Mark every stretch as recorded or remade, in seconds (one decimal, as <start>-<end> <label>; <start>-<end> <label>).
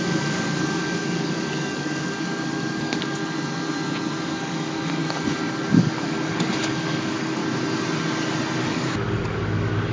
0.0-3.2 remade; 3.2-4.2 recorded; 4.2-5.0 remade; 5.0-5.7 recorded; 5.7-7.4 remade; 7.4-8.6 recorded; 8.6-9.9 remade